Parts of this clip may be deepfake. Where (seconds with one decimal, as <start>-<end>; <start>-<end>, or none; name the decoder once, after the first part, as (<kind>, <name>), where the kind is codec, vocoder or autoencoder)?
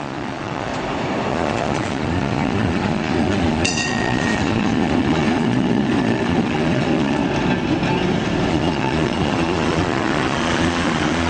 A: 0.0-0.7 (vocoder, Vocos); 1.3-7.2; 8.5-11.3